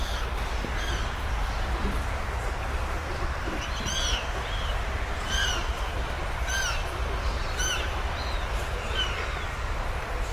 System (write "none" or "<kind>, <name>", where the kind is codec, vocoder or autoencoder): none